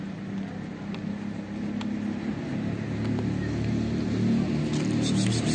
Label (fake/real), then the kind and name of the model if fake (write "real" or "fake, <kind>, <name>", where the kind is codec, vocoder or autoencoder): real